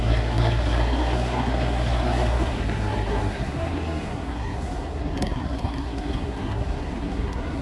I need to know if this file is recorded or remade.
remade